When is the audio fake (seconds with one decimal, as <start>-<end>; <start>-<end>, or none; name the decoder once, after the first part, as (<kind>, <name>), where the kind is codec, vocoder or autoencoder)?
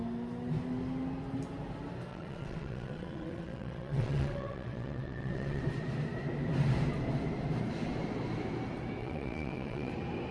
2.1-5.6 (vocoder, WaveNeXt); 9.0-9.9